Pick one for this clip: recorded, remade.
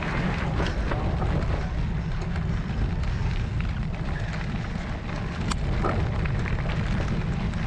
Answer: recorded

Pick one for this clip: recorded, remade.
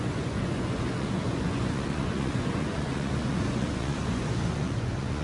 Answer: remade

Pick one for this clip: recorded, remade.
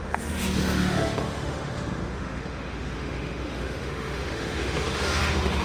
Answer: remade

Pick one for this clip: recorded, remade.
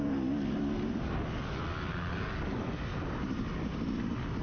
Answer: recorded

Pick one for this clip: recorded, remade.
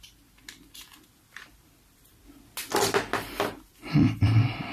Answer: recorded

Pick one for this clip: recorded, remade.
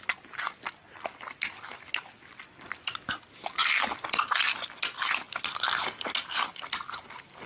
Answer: recorded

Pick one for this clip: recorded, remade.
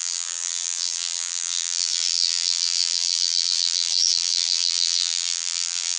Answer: remade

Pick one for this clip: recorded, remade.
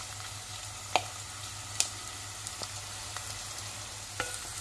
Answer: recorded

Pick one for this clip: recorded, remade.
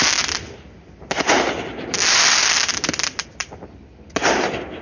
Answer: recorded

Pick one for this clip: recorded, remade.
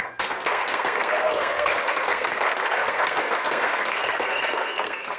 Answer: remade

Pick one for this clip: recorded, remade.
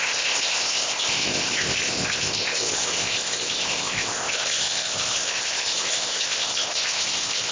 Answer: remade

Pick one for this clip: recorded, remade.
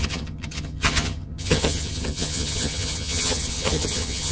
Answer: remade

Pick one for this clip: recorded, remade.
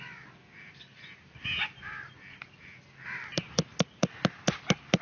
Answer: recorded